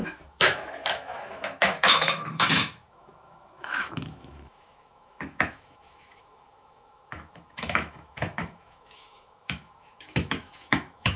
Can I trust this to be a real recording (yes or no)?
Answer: no